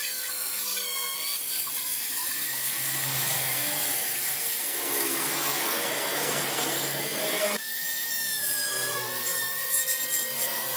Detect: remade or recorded remade